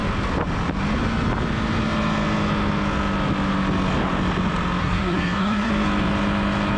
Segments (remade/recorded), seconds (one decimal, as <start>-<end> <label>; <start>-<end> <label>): 0.0-4.8 recorded; 4.8-5.7 remade; 5.7-6.8 recorded